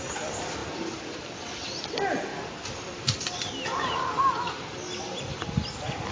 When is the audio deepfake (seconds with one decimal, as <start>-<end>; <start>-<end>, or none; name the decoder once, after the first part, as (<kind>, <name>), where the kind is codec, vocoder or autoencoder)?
none